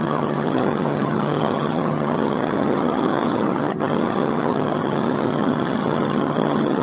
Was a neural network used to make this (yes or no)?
yes